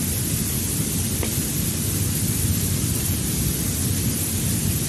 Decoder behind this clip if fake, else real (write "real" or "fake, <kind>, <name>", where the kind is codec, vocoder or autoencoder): real